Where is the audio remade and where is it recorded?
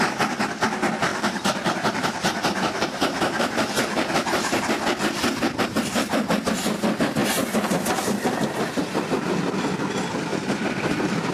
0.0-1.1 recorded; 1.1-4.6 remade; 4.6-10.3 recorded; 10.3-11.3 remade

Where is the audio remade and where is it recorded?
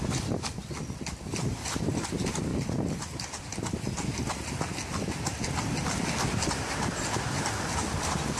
0.0-0.6 remade; 0.6-1.2 recorded; 1.2-2.5 remade; 2.5-6.5 recorded; 6.5-8.4 remade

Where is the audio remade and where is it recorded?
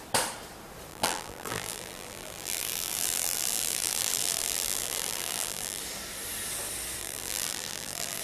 0.0-0.9 recorded; 0.9-5.8 remade; 5.8-7.0 recorded; 7.0-8.2 remade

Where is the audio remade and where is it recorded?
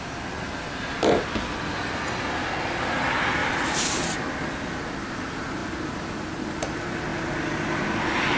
0.0-3.4 recorded; 3.4-4.0 remade; 4.0-8.4 recorded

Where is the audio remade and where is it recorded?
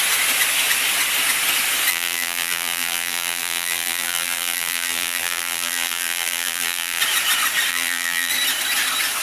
0.0-1.9 recorded; 1.9-7.0 remade; 7.0-7.7 recorded; 7.7-8.3 remade; 8.3-9.2 recorded